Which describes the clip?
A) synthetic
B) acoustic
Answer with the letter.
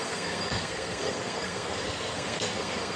A